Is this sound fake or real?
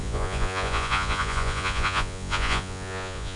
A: fake